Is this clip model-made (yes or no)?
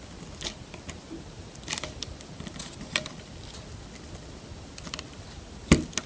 no